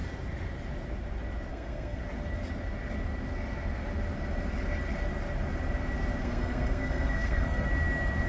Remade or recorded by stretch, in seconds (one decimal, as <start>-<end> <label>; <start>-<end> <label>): 0.0-1.5 recorded; 1.5-2.0 remade; 2.0-6.2 recorded; 6.2-7.7 remade; 7.7-8.3 recorded